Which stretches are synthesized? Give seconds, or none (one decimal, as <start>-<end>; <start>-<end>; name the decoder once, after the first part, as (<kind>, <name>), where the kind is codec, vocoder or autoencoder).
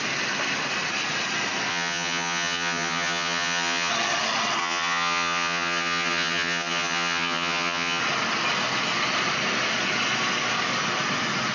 1.7-3.9 (vocoder, HiFi-GAN); 4.6-8.0